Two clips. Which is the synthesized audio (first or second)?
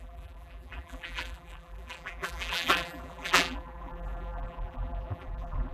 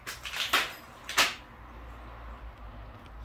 first